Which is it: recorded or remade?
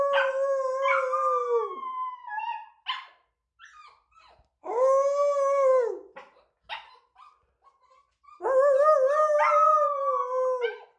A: recorded